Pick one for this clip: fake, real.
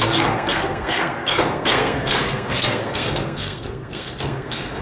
fake